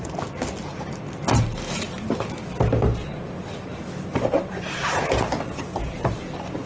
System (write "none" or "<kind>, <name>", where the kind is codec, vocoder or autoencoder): none